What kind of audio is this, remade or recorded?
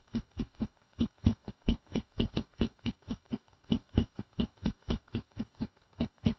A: remade